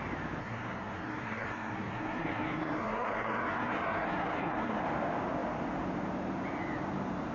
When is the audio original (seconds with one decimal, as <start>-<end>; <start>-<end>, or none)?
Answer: 0.0-0.4; 4.8-7.3